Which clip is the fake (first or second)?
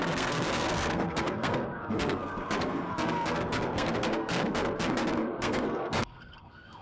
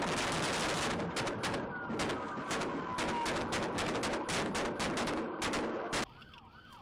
first